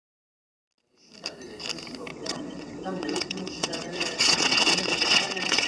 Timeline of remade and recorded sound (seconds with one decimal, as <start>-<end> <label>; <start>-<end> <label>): 0.0-2.1 recorded; 2.1-5.7 remade

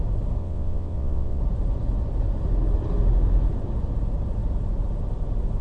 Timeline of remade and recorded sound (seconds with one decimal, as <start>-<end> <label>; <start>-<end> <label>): 0.0-0.4 recorded; 0.4-1.4 remade; 1.4-5.6 recorded

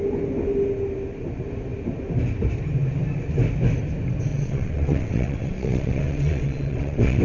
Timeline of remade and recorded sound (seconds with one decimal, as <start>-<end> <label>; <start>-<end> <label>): 0.0-4.3 recorded; 4.3-7.2 remade